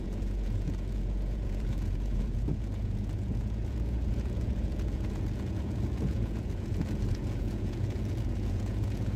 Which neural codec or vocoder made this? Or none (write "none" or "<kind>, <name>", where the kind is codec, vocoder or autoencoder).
vocoder, Vocos